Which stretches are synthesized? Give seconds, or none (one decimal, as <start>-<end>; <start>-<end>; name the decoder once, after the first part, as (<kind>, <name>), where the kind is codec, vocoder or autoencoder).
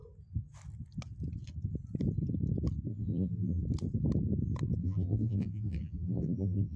2.9-3.6 (vocoder, BigVGAN v2); 4.8-6.8